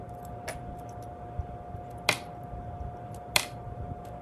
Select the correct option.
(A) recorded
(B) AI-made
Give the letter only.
A